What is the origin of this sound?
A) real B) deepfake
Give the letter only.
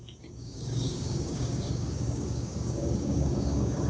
B